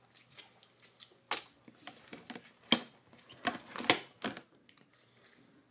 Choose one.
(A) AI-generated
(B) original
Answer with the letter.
B